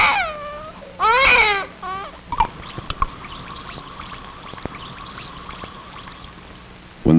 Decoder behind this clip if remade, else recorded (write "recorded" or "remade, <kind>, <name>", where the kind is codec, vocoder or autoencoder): recorded